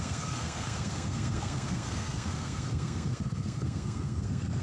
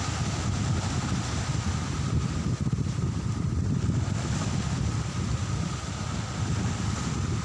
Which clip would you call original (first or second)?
second